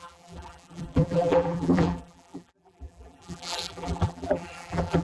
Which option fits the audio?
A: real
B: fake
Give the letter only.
B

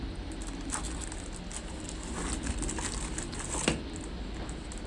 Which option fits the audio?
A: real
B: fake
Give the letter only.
A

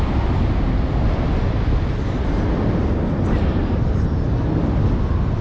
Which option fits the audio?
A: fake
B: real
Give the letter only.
B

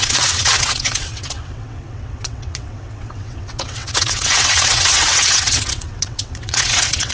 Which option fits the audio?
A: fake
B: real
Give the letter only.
A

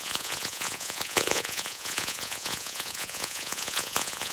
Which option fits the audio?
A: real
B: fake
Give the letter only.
B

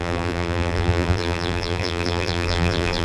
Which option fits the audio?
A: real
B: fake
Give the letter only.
B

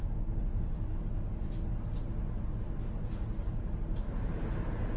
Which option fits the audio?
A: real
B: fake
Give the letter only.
B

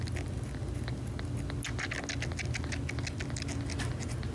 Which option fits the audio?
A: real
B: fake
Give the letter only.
A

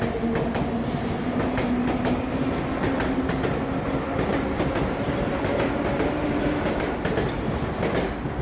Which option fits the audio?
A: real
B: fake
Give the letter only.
A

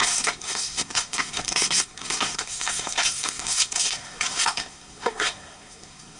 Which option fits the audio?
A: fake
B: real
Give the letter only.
A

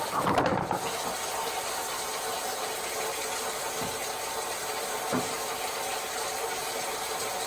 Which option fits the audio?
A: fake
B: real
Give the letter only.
B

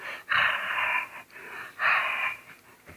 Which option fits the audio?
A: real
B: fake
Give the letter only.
A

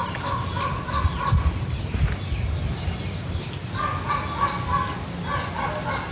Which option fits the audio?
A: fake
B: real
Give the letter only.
B